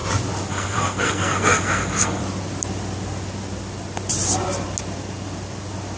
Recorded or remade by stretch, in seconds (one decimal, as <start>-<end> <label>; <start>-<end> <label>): 0.0-0.5 recorded; 0.5-2.2 remade; 2.2-6.0 recorded